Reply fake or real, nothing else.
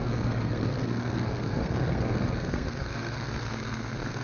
fake